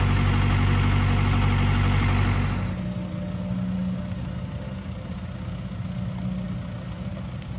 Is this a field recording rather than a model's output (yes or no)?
yes